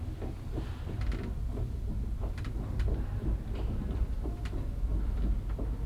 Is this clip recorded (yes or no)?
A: yes